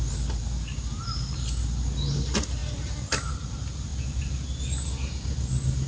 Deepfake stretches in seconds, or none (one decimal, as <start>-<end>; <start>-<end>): none

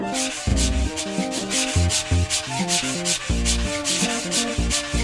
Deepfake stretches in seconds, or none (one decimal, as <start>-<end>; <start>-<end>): 0.5-1.0; 3.8-4.5

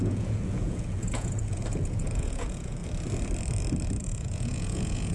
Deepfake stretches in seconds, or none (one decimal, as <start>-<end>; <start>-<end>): 0.0-2.8; 4.0-5.1

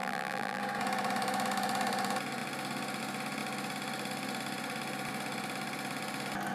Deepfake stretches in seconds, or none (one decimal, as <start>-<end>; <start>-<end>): 0.0-0.6

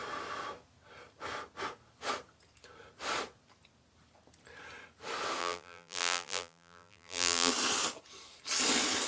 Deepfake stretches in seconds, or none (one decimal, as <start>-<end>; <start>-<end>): 5.4-7.5